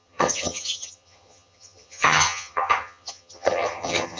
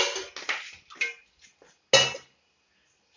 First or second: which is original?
second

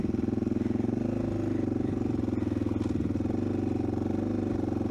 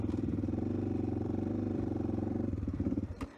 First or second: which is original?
first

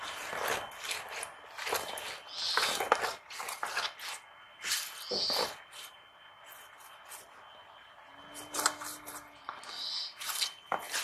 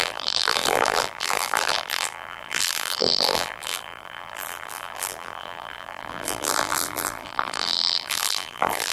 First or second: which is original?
first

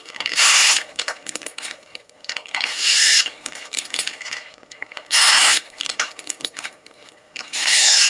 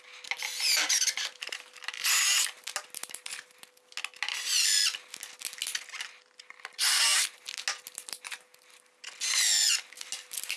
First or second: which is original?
second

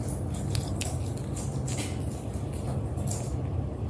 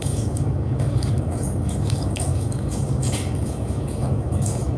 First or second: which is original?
first